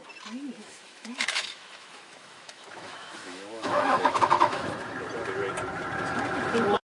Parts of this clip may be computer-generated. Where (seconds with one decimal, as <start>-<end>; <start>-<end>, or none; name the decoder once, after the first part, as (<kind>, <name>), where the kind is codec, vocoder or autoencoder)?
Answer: 0.6-4.7 (autoencoder, DAC-VAE)